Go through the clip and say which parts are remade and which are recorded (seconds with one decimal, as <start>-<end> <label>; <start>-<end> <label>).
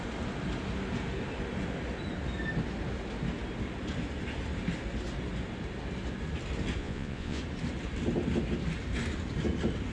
0.0-6.8 recorded; 6.8-7.4 remade; 7.4-9.9 recorded